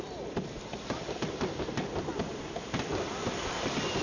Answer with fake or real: fake